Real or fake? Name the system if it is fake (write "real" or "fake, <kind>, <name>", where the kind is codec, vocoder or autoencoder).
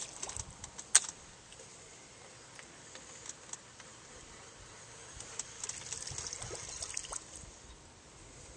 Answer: real